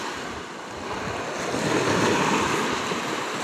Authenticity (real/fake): real